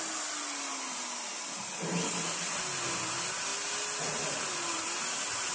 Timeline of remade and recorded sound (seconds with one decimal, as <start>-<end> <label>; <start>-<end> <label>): 0.0-5.5 recorded